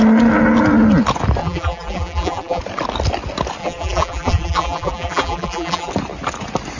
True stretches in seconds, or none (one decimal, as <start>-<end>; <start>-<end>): 0.0-1.4; 2.6-3.6; 5.9-6.8